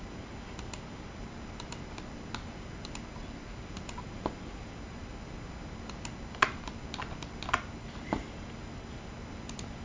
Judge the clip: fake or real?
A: real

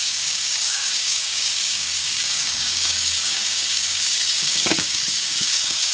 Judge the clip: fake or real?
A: fake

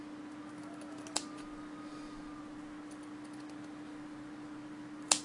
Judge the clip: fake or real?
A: real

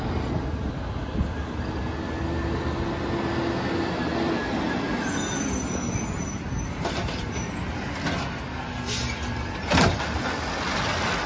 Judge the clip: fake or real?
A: real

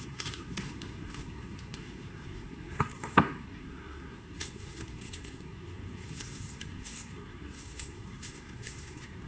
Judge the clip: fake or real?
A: fake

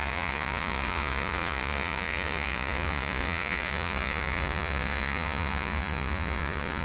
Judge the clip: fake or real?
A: fake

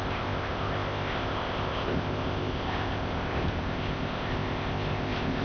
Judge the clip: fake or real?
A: fake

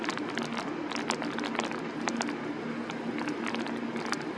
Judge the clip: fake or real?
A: real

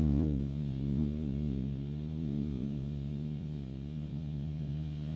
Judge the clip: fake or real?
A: fake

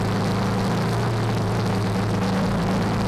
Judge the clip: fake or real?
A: real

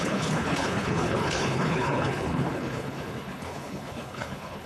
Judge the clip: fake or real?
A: fake